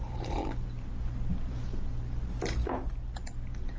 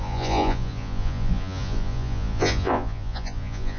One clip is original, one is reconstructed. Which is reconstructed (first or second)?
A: second